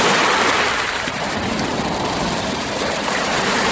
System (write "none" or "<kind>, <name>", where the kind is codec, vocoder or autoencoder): none